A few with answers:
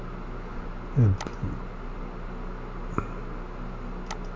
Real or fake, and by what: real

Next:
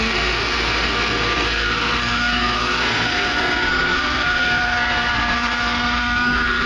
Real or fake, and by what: fake, codec, SNAC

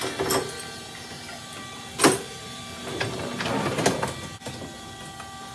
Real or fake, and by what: real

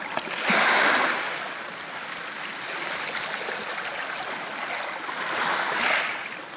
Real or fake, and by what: real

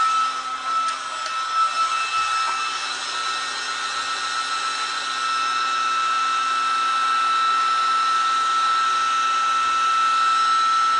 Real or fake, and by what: real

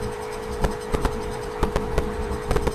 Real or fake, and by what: fake, vocoder, BigVGAN v2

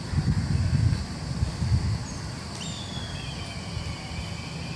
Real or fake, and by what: real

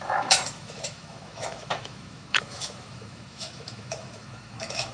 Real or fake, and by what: fake, autoencoder, DAC-VAE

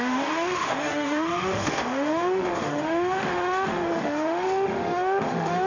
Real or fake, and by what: fake, autoencoder, DAC-VAE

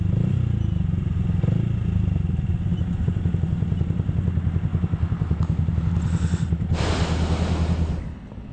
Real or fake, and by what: real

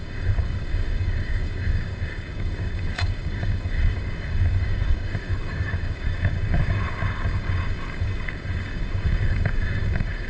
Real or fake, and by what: fake, codec, DAC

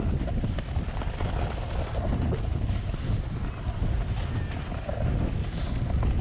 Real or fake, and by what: real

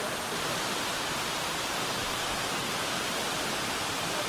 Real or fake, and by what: fake, vocoder, BigVGAN v2